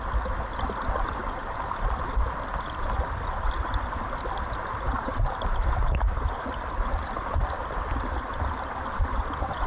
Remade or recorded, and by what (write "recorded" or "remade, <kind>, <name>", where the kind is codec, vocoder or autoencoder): recorded